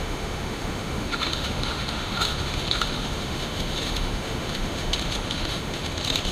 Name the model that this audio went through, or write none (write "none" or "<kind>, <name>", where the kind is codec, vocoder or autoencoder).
autoencoder, DAC-VAE